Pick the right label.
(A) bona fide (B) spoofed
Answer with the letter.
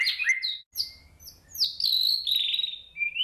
A